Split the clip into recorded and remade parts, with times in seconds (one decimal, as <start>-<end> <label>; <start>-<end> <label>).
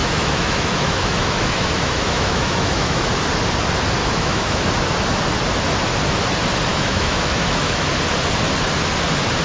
0.0-3.1 remade; 3.1-4.0 recorded; 4.0-4.6 remade; 4.6-6.7 recorded; 6.7-7.9 remade; 7.9-9.4 recorded